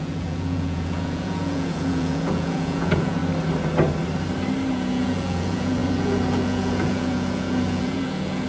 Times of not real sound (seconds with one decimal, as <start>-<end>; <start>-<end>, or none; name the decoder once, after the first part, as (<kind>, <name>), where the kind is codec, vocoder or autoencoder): 0.0-3.2 (vocoder, Vocos); 4.7-8.5